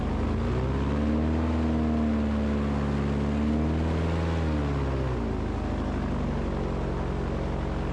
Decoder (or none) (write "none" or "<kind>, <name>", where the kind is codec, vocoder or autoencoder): none